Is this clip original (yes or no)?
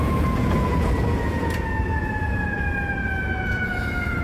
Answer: no